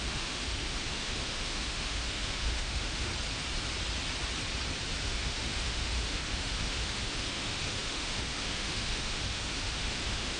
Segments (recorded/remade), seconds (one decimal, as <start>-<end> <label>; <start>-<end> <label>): 0.0-3.1 remade; 3.1-5.0 recorded; 5.0-10.4 remade